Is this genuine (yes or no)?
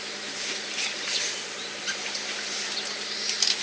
yes